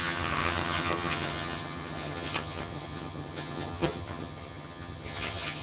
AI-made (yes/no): yes